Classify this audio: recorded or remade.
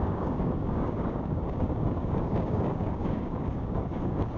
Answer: remade